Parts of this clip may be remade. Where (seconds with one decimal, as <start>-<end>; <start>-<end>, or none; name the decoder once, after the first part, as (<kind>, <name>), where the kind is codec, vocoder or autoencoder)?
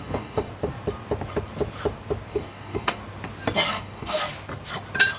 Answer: 0.0-0.5 (codec, DAC); 2.3-3.0; 3.7-4.2